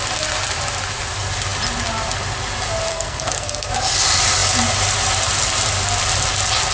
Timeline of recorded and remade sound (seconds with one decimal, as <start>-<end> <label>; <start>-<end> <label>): 0.0-2.9 recorded; 2.9-3.7 remade; 3.7-6.7 recorded